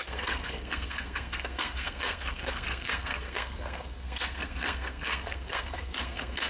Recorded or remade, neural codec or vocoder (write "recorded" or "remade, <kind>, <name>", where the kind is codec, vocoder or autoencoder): remade, codec, SNAC